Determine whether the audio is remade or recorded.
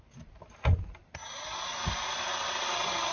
recorded